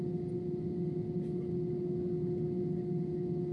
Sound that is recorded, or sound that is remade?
recorded